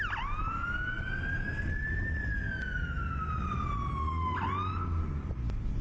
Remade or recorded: recorded